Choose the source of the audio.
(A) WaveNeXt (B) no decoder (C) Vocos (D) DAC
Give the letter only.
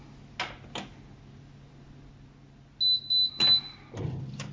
B